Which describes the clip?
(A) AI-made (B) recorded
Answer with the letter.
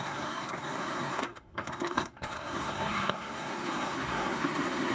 A